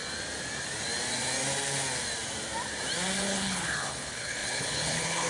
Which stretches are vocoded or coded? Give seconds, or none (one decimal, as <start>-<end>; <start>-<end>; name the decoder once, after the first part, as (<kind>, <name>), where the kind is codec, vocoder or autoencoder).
3.2-5.3 (codec, HILCodec)